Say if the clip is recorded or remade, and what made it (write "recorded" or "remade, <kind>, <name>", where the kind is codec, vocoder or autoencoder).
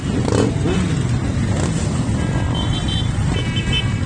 remade, vocoder, BigVGAN v2